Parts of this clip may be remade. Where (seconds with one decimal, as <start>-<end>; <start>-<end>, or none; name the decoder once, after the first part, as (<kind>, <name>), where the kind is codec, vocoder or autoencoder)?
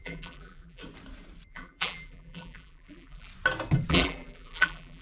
0.0-0.8 (vocoder, BigVGAN v2); 1.5-3.3; 3.9-5.0